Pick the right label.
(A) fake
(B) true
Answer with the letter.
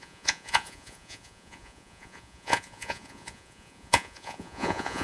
A